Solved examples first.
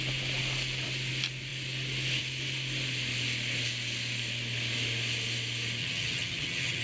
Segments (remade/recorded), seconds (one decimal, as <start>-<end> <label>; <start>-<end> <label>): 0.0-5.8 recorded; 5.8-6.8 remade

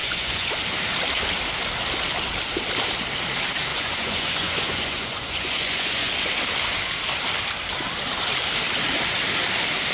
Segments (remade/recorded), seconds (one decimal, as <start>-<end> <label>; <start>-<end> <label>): 0.0-0.5 remade; 0.5-3.7 recorded; 3.7-6.1 remade; 6.1-9.9 recorded

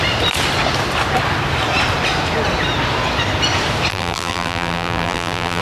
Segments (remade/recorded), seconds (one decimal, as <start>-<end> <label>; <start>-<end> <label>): 0.0-3.9 recorded; 3.9-5.6 remade